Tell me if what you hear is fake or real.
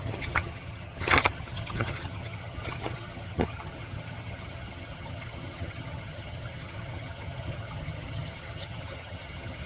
fake